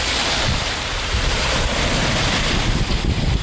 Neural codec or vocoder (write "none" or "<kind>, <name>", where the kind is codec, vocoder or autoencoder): none